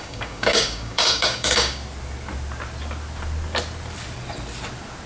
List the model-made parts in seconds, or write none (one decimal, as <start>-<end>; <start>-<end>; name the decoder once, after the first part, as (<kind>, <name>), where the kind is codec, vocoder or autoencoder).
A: 0.0-1.8 (codec, DAC)

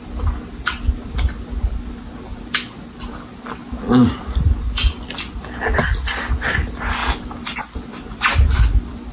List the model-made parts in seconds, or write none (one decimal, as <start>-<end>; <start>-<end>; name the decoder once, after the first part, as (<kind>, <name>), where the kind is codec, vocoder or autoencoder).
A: none

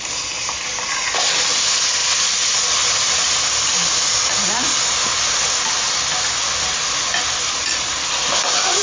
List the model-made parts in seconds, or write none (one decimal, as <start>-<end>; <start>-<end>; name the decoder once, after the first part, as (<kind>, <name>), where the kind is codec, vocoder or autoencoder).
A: none